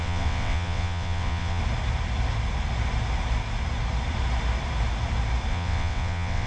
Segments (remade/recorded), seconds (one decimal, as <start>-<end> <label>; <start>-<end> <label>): 0.0-1.6 remade; 1.6-5.5 recorded; 5.5-6.5 remade